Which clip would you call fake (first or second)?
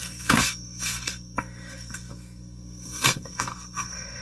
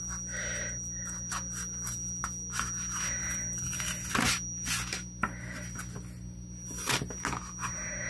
first